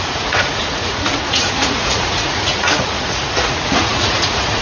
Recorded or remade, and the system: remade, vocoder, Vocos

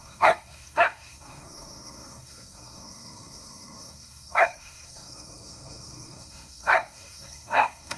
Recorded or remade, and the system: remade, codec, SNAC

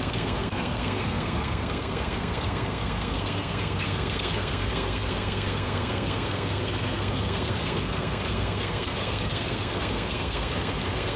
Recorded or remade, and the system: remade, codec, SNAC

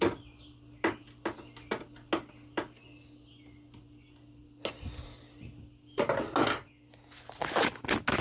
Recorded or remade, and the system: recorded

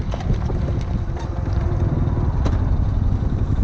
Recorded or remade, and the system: recorded